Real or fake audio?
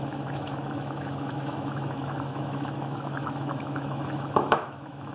fake